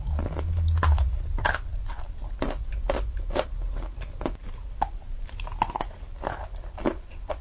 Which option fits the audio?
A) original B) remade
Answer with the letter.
A